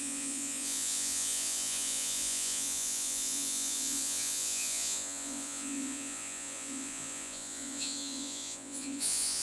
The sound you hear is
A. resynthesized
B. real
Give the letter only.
A